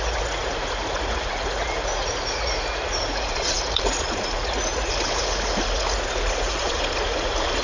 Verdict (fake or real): fake